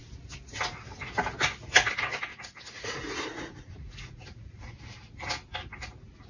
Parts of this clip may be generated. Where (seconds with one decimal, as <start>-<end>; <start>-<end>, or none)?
2.3-4.8